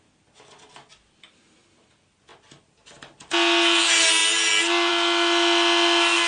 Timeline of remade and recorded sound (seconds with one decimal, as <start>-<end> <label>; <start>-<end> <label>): 0.0-6.3 recorded